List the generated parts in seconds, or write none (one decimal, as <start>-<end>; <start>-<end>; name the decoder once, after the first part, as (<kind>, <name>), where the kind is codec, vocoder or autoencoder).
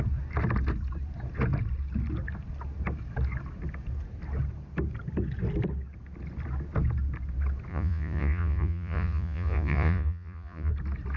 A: 7.7-10.7 (vocoder, Vocos)